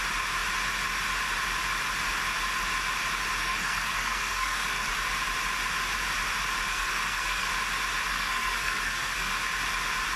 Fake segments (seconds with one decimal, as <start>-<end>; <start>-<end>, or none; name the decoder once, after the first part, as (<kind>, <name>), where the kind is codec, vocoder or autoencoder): 3.4-4.9 (codec, SNAC); 6.7-7.5; 8.1-9.3